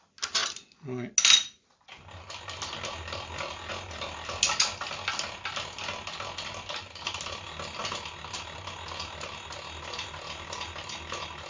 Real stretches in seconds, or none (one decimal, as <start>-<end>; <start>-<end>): 0.0-11.5